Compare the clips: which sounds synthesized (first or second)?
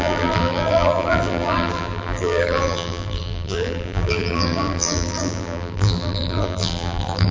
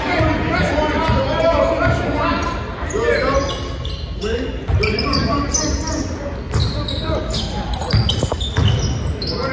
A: first